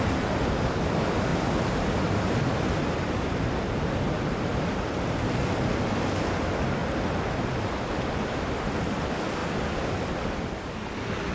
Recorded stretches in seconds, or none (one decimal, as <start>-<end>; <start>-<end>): 0.0-11.3